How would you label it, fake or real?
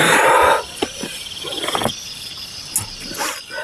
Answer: real